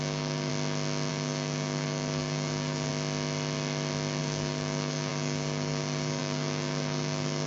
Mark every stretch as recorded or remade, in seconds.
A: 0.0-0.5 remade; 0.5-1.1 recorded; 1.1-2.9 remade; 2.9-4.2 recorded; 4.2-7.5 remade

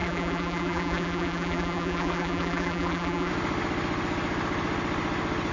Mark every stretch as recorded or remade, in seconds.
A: 0.0-3.3 remade; 3.3-5.5 recorded

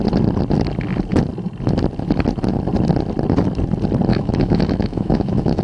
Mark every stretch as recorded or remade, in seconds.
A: 0.0-4.1 recorded; 4.1-5.6 remade

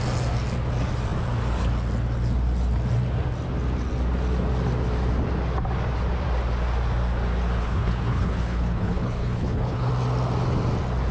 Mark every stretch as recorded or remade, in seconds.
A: 0.0-7.6 recorded; 7.6-9.9 remade; 9.9-11.1 recorded

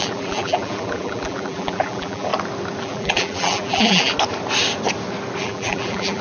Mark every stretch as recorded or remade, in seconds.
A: 0.0-2.3 remade; 2.3-2.8 recorded; 2.8-4.1 remade; 4.1-5.4 recorded; 5.4-6.2 remade